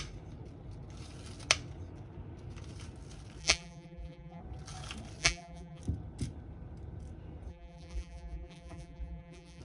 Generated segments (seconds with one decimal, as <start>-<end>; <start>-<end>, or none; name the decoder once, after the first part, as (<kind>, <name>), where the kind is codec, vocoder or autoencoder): 3.4-4.4 (vocoder, BigVGAN v2); 5.2-5.8; 7.5-9.6